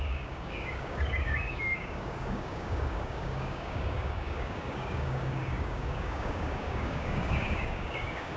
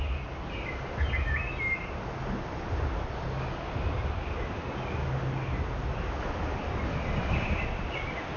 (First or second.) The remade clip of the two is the first